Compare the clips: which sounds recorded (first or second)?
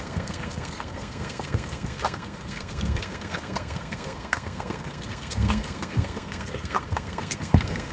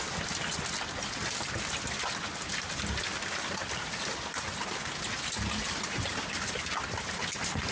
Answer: second